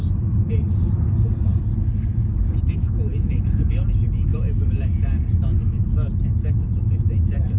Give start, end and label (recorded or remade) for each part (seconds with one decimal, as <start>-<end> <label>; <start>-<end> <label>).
0.0-1.5 recorded; 1.5-2.1 remade; 2.1-7.6 recorded